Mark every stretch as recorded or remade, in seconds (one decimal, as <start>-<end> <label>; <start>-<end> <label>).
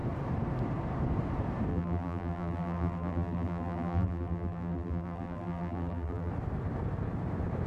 0.0-1.7 recorded; 1.7-6.3 remade; 6.3-7.7 recorded